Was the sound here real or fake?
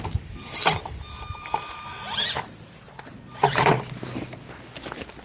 real